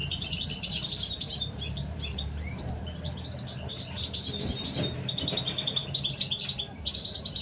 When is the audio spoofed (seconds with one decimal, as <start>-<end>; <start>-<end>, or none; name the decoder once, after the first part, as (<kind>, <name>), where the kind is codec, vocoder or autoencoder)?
0.0-5.8 (vocoder, BigVGAN v2); 6.9-7.4